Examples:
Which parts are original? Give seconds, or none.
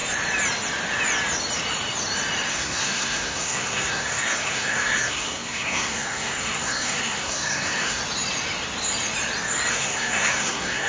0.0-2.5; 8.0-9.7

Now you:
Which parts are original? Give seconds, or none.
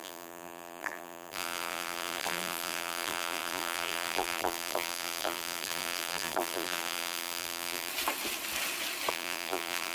7.9-9.1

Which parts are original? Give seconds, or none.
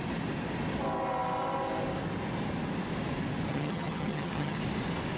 0.0-3.5; 4.6-5.2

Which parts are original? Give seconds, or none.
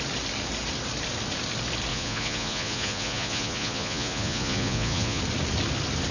0.0-1.9; 5.2-6.1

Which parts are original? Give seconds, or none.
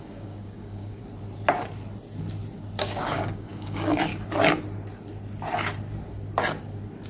1.0-2.8; 4.1-7.1